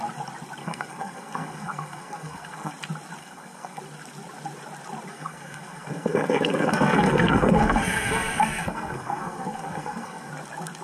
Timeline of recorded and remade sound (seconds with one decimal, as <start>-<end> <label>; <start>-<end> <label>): 0.0-0.6 recorded; 0.6-2.7 remade; 2.7-3.2 recorded; 3.2-3.8 remade; 3.8-5.1 recorded; 5.1-10.3 remade; 10.3-10.8 recorded